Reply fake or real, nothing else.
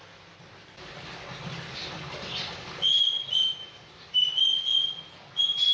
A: real